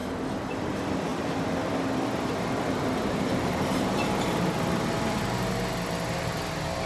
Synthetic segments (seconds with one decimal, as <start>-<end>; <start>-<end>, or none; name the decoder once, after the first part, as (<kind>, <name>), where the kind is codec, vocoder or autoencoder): 1.1-5.2 (vocoder, BigVGAN v2)